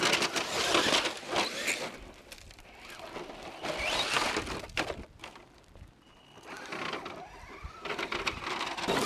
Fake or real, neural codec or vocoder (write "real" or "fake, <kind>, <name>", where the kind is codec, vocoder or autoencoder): real